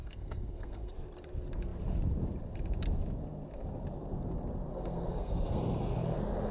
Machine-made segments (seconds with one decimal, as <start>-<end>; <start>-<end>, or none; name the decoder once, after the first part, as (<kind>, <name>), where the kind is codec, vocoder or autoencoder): 0.0-0.9 (codec, SNAC); 4.7-5.6